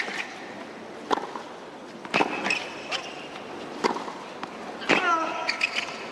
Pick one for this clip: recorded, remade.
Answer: recorded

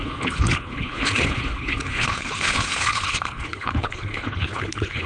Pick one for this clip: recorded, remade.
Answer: remade